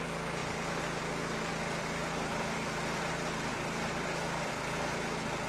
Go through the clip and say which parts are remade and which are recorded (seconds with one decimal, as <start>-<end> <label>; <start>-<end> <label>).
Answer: 0.0-1.5 recorded; 1.5-3.1 remade; 3.1-3.5 recorded; 3.5-4.5 remade; 4.5-5.5 recorded